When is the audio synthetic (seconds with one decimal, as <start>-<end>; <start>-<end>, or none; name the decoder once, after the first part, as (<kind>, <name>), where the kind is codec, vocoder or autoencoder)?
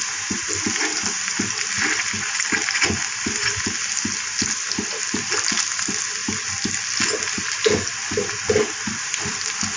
none